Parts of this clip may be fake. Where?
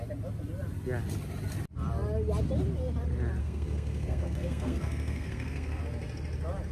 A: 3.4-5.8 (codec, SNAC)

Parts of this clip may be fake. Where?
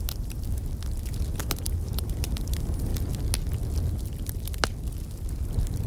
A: 0.0-0.6 (vocoder, BigVGAN v2); 1.4-2.9; 5.5-5.9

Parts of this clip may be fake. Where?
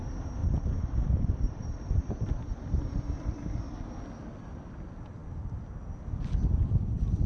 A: 0.4-1.9 (vocoder, BigVGAN v2)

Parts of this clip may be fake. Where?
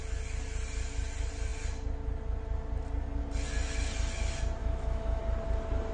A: 4.6-5.2 (autoencoder, DAC-VAE)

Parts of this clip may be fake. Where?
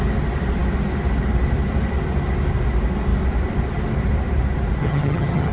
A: 4.8-5.5 (vocoder, HiFi-GAN)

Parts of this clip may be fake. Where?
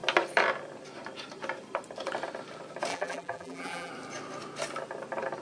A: 2.9-3.9 (vocoder, BigVGAN v2)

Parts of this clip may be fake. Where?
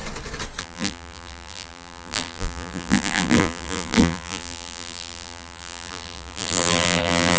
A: 0.6-7.4 (vocoder, BigVGAN v2)